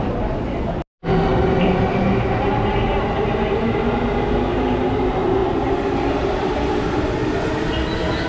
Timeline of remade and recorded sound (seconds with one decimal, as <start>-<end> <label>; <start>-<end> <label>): 0.0-5.4 recorded; 5.4-7.2 remade; 7.2-8.3 recorded